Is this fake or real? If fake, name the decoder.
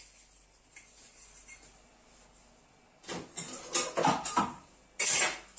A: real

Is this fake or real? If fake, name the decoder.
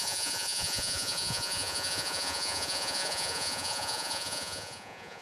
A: fake, vocoder, Vocos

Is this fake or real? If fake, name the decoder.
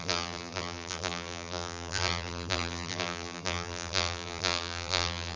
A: fake, vocoder, BigVGAN v2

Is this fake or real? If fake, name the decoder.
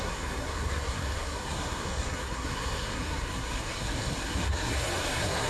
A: fake, codec, SNAC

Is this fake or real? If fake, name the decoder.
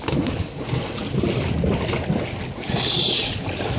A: real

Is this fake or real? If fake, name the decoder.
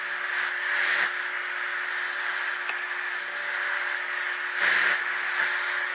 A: real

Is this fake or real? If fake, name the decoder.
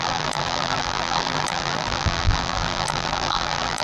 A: fake, vocoder, BigVGAN v2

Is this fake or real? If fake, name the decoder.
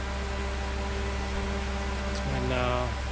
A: real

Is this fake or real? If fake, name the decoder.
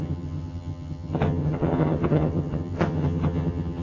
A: fake, vocoder, HiFi-GAN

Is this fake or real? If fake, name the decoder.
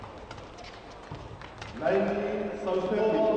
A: real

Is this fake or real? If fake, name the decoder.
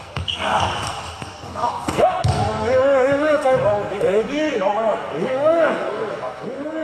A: fake, codec, SNAC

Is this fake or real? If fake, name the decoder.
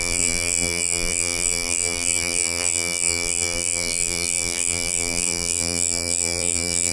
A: fake, vocoder, BigVGAN v2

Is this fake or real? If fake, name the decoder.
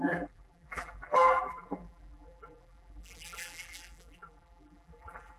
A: fake, vocoder, BigVGAN v2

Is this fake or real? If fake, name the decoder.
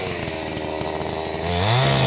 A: real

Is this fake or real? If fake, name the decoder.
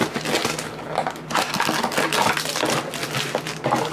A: real